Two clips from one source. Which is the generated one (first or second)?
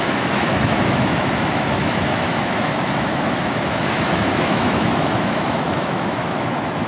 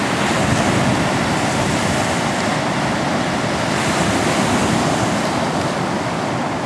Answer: first